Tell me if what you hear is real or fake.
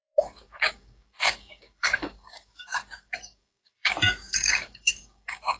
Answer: fake